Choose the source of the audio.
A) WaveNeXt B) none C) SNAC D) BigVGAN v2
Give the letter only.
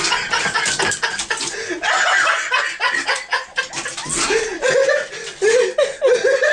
B